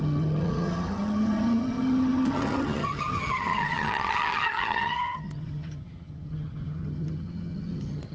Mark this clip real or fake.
fake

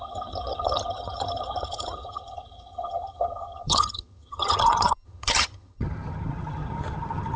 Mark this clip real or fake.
fake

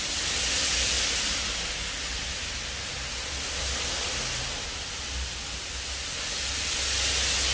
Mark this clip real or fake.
real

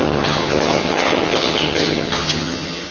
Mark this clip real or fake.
fake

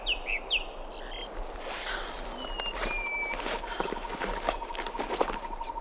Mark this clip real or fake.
real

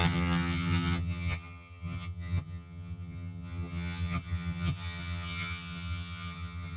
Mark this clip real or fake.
fake